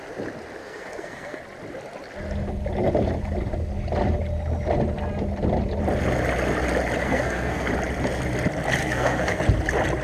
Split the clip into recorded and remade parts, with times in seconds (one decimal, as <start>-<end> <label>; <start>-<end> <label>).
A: 0.0-0.6 recorded; 0.6-1.4 remade; 1.4-7.0 recorded; 7.0-7.7 remade; 7.7-8.8 recorded; 8.8-9.4 remade; 9.4-10.0 recorded